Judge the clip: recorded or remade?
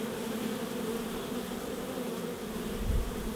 recorded